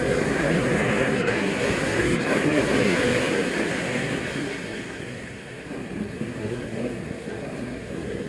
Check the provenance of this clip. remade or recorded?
remade